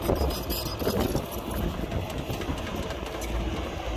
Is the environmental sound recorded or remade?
recorded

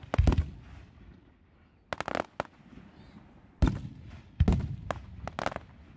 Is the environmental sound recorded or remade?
recorded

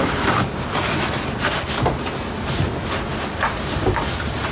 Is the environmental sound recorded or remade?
recorded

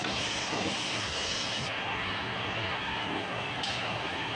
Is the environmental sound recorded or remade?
remade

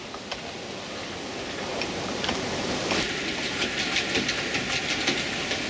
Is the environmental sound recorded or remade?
recorded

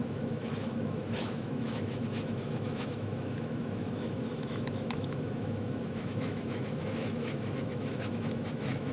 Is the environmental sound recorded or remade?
remade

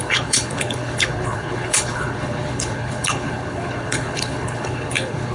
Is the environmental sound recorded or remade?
remade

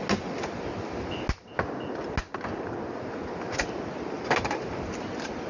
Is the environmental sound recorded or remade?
recorded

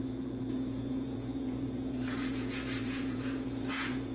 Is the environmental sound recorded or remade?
remade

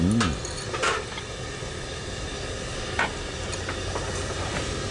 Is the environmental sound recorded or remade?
recorded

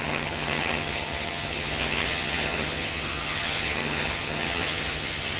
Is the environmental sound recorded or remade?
remade